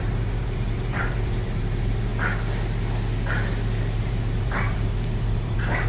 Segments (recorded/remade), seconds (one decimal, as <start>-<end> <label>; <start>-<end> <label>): 0.0-2.1 remade; 2.1-4.0 recorded; 4.0-5.9 remade